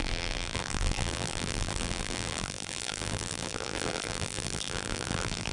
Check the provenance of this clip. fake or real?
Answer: fake